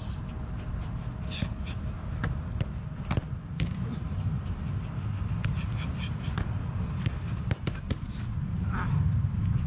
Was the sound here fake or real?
real